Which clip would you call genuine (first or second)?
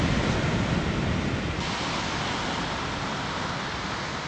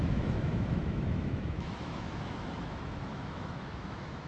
first